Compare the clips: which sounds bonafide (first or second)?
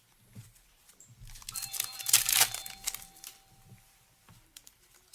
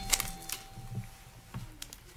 second